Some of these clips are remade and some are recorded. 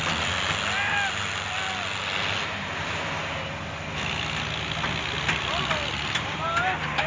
recorded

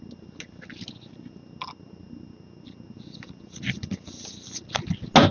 recorded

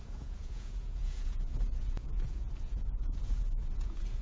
remade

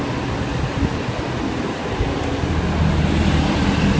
recorded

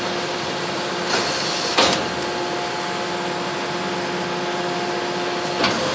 recorded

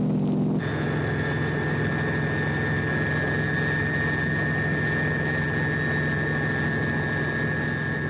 recorded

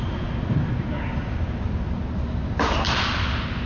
recorded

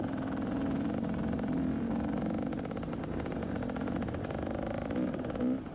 remade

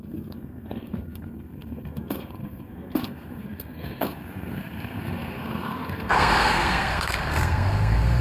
remade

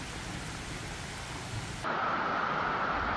recorded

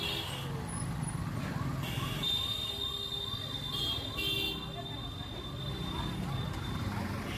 recorded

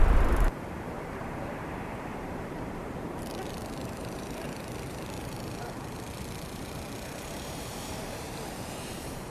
remade